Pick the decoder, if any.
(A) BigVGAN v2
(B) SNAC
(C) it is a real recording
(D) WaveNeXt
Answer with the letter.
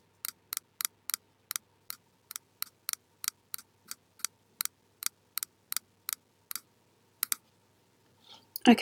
C